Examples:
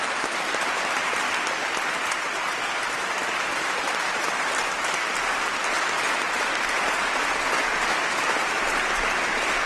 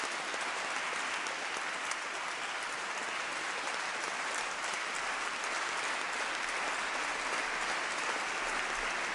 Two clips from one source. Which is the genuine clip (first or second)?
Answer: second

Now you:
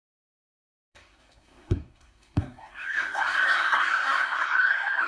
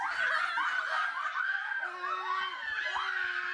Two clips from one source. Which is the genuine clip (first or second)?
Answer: second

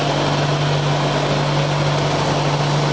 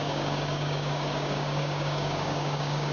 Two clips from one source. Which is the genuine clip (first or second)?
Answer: first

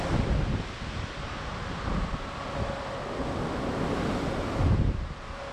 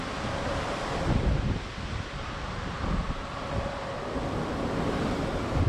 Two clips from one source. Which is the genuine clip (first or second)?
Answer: first